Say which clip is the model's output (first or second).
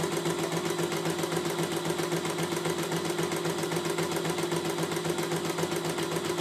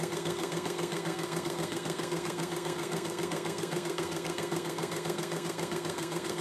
second